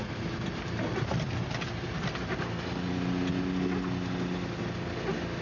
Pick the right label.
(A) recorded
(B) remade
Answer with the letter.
A